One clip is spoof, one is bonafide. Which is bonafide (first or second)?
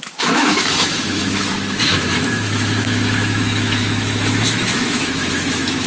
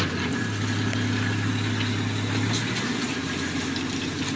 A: second